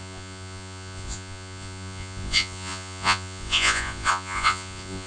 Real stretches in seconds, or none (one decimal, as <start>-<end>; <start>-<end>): none